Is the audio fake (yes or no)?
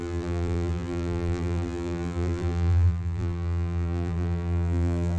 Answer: yes